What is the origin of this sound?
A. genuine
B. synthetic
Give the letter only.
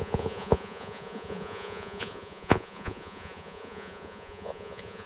B